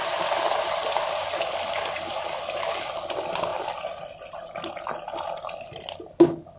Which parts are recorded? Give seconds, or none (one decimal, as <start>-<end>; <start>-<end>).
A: 0.0-6.6